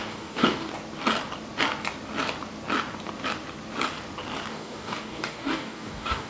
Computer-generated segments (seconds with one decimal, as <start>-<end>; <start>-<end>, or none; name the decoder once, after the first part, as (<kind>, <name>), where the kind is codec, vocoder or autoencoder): 0.0-0.7 (codec, DAC); 4.5-6.3